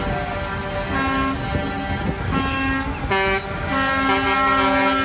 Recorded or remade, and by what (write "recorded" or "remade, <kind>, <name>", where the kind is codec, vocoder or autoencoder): recorded